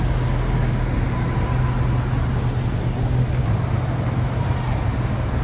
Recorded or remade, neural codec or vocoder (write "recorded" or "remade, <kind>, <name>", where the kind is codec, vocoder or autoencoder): recorded